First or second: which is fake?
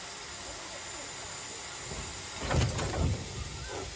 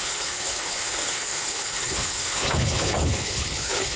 second